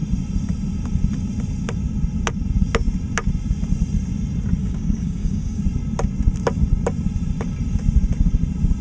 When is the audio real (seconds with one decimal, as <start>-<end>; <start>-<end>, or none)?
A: 0.0-4.6; 5.6-8.8